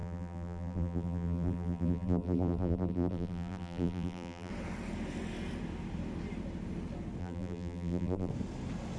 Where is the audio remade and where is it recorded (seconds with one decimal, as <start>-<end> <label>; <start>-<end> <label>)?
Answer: 0.0-4.5 remade; 4.5-7.2 recorded; 7.2-8.3 remade; 8.3-9.0 recorded